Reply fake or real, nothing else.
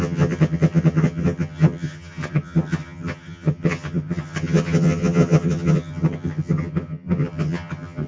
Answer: fake